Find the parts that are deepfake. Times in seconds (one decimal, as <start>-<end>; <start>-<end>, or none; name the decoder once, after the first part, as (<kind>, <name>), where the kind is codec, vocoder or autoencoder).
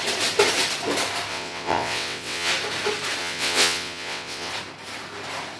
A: 1.3-2.5 (vocoder, WaveNeXt); 3.2-4.5